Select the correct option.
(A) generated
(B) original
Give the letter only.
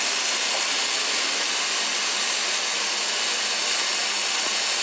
B